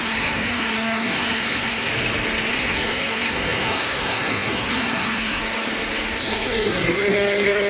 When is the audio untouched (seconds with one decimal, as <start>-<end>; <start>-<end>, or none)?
1.9-2.5; 5.4-6.2